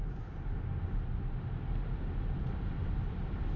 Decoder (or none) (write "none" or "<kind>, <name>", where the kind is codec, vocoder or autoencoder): none